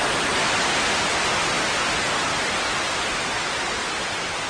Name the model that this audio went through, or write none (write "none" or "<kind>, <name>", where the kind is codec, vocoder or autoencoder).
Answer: none